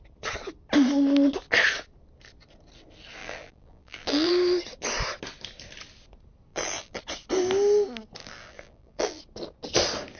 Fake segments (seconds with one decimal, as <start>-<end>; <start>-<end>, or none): 3.2-4.3; 6.5-7.0; 8.2-9.2